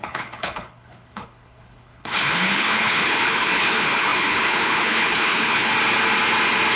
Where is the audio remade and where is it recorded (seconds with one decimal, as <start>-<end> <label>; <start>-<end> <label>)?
0.0-5.7 remade; 5.7-6.8 recorded